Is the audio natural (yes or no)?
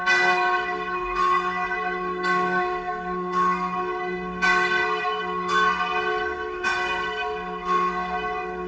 no